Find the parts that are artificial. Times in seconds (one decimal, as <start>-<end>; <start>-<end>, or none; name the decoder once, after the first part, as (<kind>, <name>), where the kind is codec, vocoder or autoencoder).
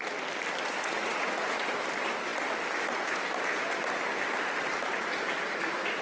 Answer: 0.8-1.7 (vocoder, Vocos)